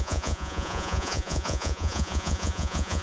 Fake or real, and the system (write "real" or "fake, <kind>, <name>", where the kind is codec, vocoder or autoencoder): fake, vocoder, Vocos